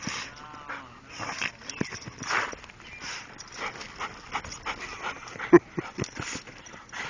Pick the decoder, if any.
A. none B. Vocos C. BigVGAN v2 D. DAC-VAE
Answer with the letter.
A